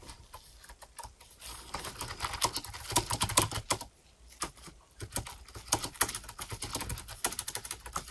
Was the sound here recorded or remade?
recorded